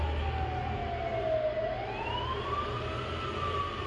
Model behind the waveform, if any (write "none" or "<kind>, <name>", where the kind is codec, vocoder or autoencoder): none